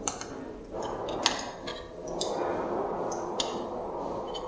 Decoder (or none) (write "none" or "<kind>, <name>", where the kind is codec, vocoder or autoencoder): none